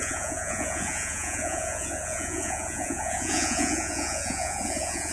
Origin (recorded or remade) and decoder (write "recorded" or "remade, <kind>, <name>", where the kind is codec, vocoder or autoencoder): remade, vocoder, Vocos